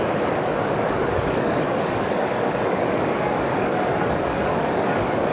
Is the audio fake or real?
fake